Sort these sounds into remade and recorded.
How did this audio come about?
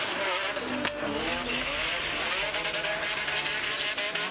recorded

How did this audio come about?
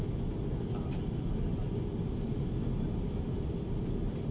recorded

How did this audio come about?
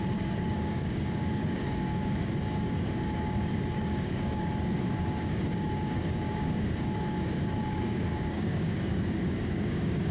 remade